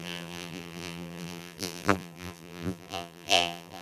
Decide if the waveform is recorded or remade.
remade